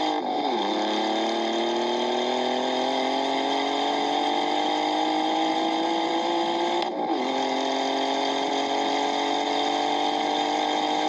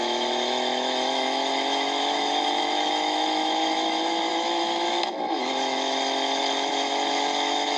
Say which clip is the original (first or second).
first